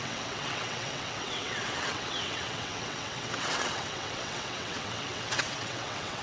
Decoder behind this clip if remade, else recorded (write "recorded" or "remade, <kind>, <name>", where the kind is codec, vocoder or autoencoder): remade, vocoder, WaveNeXt